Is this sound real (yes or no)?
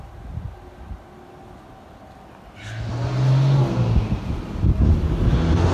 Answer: yes